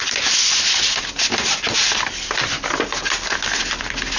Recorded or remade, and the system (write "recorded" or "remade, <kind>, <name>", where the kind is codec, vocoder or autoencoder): recorded